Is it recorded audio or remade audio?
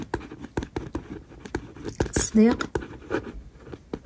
recorded